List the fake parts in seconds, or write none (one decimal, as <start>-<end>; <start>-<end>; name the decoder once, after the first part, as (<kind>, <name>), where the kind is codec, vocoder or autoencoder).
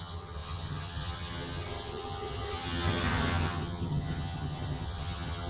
0.0-5.5 (vocoder, HiFi-GAN)